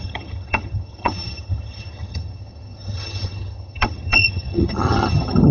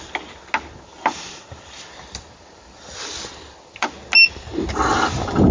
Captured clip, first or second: second